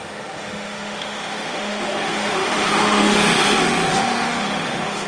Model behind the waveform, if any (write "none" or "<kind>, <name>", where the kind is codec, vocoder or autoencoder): autoencoder, DAC-VAE